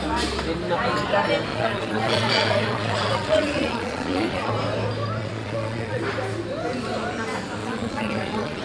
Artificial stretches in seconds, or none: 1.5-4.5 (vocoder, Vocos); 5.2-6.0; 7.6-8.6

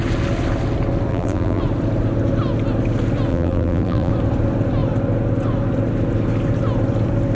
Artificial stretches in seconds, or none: 1.1-1.6 (vocoder, BigVGAN v2); 3.3-4.1

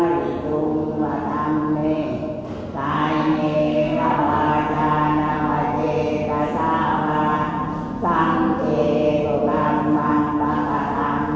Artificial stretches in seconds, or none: 3.2-4.5 (codec, SNAC)

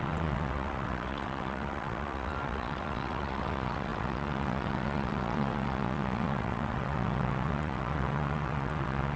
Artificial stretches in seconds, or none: 0.0-9.2 (vocoder, WaveNeXt)

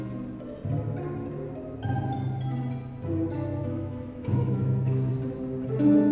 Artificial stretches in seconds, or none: 3.6-5.1 (autoencoder, DAC-VAE)

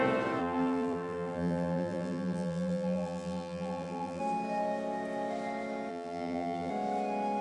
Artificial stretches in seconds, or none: 0.4-4.2 (vocoder, BigVGAN v2); 5.9-6.7